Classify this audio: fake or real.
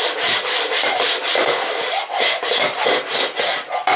real